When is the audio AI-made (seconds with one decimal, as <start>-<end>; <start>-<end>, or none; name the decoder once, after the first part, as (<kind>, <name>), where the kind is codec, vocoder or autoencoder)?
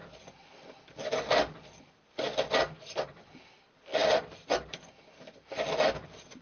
none